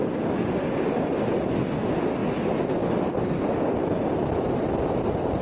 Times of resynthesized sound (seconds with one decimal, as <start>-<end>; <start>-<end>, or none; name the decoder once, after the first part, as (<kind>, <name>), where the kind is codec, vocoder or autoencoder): none